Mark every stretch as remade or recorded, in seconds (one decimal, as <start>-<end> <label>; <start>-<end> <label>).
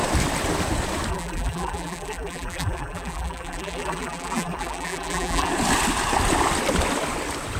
0.0-1.1 recorded; 1.1-5.5 remade; 5.5-7.6 recorded